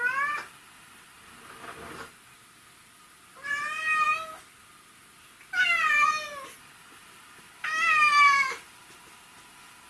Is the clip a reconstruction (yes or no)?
no